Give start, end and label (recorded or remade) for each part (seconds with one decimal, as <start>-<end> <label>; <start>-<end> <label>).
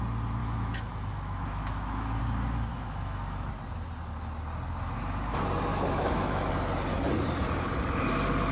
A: 0.0-0.4 recorded; 0.4-2.2 remade; 2.2-2.7 recorded; 2.7-3.5 remade; 3.5-5.7 recorded; 5.7-6.5 remade; 6.5-8.5 recorded